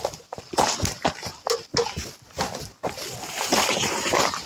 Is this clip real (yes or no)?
yes